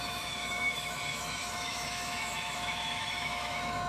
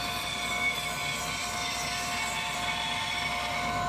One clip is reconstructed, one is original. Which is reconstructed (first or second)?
first